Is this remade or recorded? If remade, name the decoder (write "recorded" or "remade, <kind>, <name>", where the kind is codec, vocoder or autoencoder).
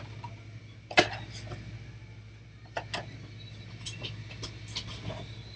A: recorded